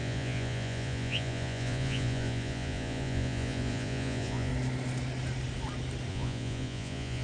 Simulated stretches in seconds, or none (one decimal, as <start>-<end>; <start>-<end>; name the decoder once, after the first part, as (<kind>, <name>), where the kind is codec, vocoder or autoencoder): 0.0-4.5 (vocoder, Vocos); 6.1-7.2